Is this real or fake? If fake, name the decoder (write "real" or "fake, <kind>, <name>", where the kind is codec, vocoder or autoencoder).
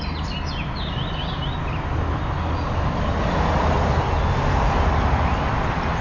real